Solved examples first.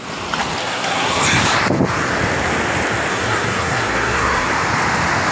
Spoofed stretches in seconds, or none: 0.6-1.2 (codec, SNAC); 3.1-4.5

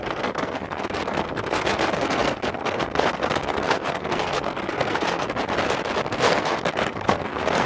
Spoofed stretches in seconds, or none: 0.0-5.4 (codec, SNAC); 6.1-7.7

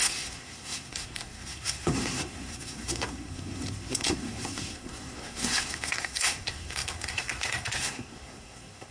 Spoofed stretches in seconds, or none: 0.0-8.9 (codec, SNAC)

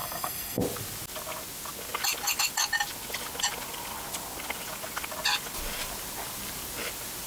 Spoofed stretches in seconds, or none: 0.0-0.6 (codec, SNAC)

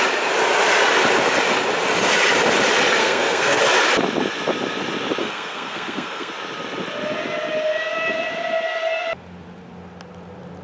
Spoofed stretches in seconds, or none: 3.0-3.6 (codec, SNAC); 5.2-6.3

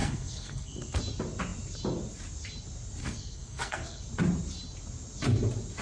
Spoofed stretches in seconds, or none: 0.0-1.0 (codec, SNAC); 3.0-4.0